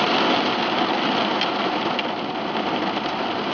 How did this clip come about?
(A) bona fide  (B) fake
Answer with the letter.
A